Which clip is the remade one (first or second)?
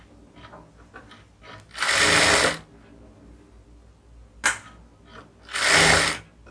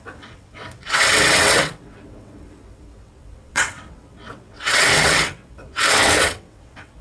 second